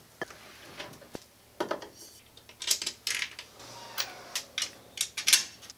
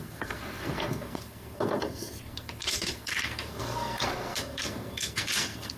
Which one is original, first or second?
first